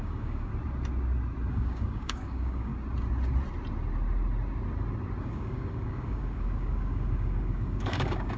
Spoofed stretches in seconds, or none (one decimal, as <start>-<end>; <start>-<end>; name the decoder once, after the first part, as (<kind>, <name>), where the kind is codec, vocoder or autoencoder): 0.0-0.5 (codec, DAC); 1.5-2.7; 5.2-8.4